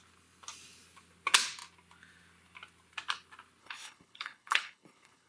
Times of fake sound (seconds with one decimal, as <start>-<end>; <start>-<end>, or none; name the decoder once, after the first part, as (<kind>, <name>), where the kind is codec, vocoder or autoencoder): 3.6-5.3 (codec, HILCodec)